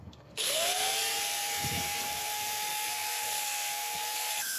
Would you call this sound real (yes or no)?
no